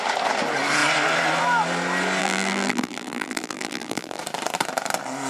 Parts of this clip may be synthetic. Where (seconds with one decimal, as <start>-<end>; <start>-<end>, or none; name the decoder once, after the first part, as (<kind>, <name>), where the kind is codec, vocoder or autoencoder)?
2.2-4.2 (vocoder, BigVGAN v2)